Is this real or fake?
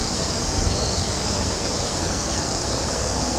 fake